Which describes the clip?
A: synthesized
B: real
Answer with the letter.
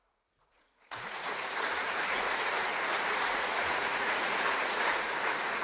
A